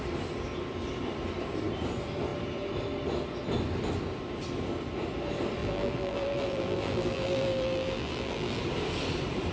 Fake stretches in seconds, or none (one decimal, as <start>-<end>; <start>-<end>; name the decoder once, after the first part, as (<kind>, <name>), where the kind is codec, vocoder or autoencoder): 5.6-8.6 (vocoder, BigVGAN v2)

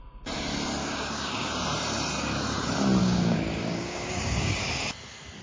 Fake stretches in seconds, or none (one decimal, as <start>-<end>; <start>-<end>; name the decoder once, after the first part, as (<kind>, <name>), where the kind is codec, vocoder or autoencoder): 0.8-1.5 (codec, DAC); 3.0-4.6

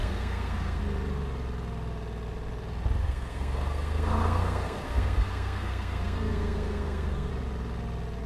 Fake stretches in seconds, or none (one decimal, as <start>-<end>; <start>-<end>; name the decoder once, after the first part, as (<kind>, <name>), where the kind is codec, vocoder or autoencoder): 0.0-0.8 (codec, SNAC); 3.0-7.3

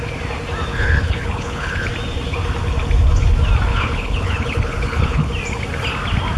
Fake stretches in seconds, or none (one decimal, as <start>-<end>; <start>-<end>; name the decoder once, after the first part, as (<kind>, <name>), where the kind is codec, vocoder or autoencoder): 0.7-1.9 (codec, HILCodec); 3.7-5.3

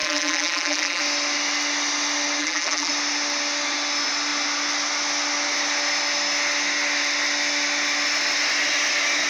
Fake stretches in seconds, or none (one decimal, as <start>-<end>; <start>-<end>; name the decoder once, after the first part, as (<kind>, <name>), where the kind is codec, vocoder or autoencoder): 0.0-1.0 (vocoder, BigVGAN v2); 2.4-2.9

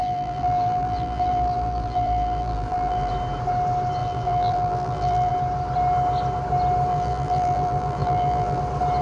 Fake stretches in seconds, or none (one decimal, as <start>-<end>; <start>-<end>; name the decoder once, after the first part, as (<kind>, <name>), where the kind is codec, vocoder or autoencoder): 0.0-3.1 (vocoder, BigVGAN v2); 4.0-5.3; 6.9-8.6

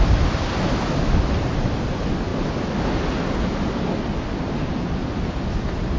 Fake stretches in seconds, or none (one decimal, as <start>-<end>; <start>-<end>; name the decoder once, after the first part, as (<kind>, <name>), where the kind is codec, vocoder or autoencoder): 0.0-2.3 (vocoder, BigVGAN v2); 4.7-6.0

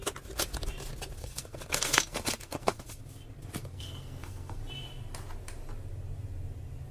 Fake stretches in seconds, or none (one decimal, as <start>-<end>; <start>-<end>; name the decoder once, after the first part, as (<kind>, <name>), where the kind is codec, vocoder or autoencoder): 1.2-3.0 (codec, SNAC); 3.6-4.6